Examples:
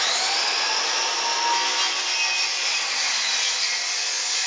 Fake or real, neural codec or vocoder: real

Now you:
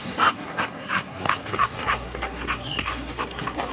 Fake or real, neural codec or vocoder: fake, codec, SNAC